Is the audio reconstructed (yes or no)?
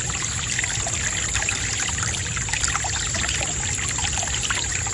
no